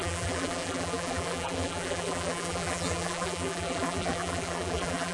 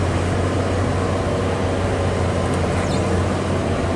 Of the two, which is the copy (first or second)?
first